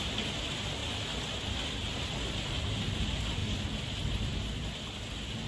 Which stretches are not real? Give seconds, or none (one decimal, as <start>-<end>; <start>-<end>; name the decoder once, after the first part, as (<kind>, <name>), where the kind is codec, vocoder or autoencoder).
none